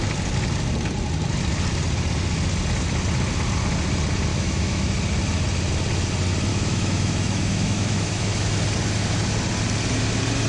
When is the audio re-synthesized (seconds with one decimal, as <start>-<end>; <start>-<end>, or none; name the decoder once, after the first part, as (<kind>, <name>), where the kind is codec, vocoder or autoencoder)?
4.3-4.9 (autoencoder, DAC-VAE); 6.5-8.5